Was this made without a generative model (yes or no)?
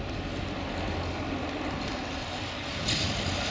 yes